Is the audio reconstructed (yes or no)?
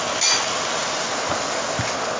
no